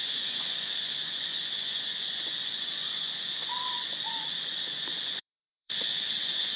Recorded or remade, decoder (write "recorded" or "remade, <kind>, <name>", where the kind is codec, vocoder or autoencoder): remade, vocoder, Vocos